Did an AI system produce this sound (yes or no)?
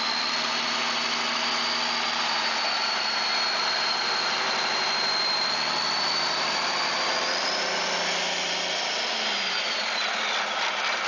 no